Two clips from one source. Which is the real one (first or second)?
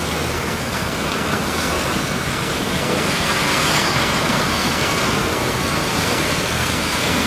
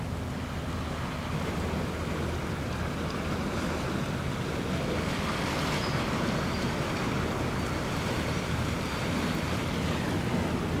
second